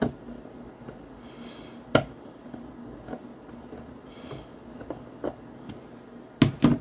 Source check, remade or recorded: recorded